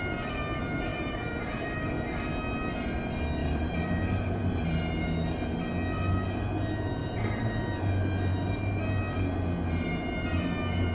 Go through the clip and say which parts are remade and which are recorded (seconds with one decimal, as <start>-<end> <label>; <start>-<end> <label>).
0.0-0.9 recorded; 0.9-1.9 remade; 1.9-3.4 recorded; 3.4-4.5 remade; 4.5-7.0 recorded; 7.0-7.6 remade; 7.6-8.3 recorded; 8.3-8.8 remade; 8.8-10.9 recorded